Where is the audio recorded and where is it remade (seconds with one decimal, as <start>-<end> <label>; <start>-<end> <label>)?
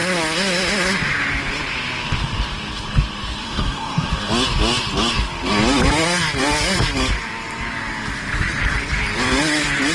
0.0-3.4 recorded; 3.4-4.1 remade; 4.1-9.9 recorded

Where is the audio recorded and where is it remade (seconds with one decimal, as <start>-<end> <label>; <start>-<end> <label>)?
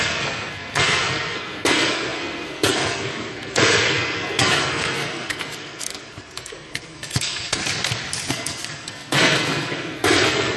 0.0-7.6 remade; 7.6-8.3 recorded; 8.3-10.6 remade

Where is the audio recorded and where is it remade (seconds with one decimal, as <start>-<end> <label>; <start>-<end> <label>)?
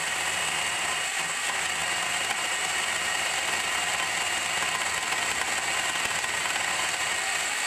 0.0-7.7 recorded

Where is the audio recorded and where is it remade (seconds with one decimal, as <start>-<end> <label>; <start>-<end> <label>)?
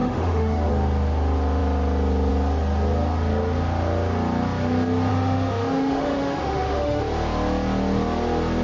0.0-0.7 remade; 0.7-5.1 recorded; 5.1-7.0 remade; 7.0-8.6 recorded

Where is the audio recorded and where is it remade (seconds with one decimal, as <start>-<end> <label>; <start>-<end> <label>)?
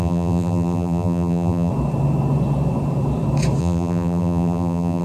0.0-1.7 remade; 1.7-3.6 recorded; 3.6-5.0 remade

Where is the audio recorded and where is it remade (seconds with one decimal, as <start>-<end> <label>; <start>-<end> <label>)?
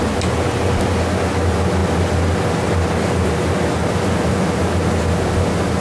0.0-5.8 recorded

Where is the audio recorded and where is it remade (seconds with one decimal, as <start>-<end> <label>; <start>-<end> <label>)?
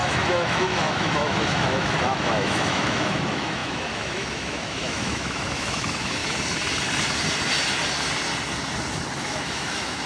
0.0-6.2 remade; 6.2-9.2 recorded; 9.2-10.1 remade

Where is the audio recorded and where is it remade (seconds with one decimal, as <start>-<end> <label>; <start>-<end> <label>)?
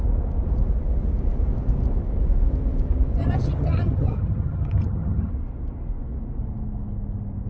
0.0-3.2 recorded; 3.2-5.3 remade; 5.3-7.5 recorded